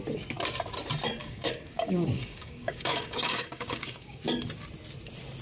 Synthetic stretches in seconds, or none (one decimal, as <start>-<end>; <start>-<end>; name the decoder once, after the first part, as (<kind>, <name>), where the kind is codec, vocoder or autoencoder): 1.2-4.2 (codec, DAC)